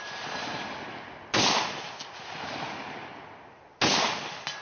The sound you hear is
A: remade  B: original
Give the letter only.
B